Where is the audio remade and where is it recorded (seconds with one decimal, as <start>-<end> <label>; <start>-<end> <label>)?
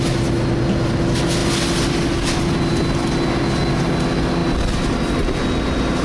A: 0.0-6.0 recorded